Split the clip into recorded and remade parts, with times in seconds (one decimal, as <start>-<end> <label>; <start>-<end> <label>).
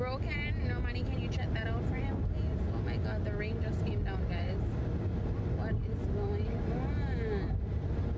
0.0-8.2 recorded